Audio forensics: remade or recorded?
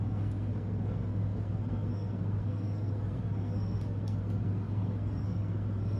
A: remade